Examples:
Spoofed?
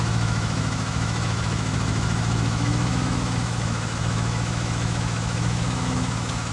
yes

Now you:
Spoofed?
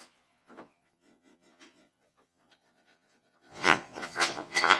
yes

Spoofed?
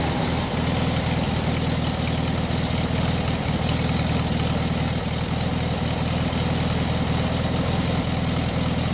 no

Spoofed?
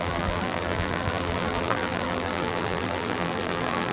yes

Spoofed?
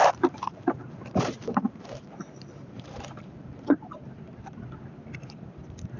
yes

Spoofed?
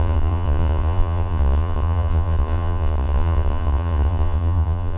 yes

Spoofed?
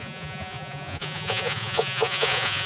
yes